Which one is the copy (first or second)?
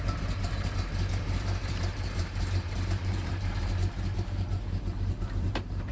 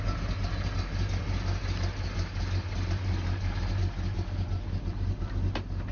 first